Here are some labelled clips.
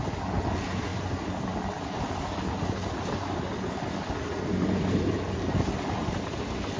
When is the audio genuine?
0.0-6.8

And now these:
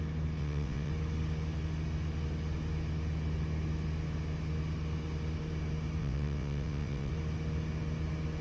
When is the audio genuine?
0.0-0.4; 0.9-6.0; 7.1-8.4

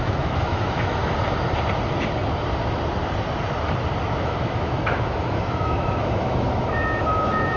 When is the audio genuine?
1.0-4.2

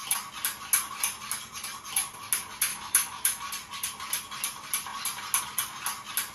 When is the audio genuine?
0.0-2.7; 3.4-6.3

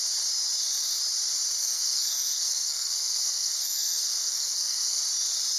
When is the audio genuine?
0.0-1.6; 5.0-5.6

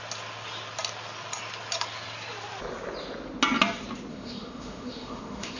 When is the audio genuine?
0.0-4.1

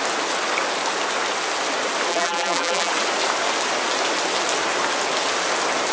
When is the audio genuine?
0.0-2.1; 2.9-5.9